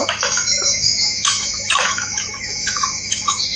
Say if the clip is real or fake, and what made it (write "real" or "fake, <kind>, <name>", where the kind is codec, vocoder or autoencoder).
fake, autoencoder, DAC-VAE